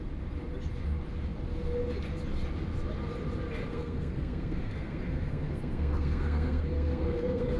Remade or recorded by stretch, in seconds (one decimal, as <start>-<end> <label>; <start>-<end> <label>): 0.0-3.7 recorded; 3.7-7.6 remade